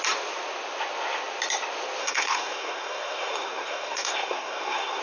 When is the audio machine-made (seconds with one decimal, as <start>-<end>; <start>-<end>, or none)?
2.0-5.0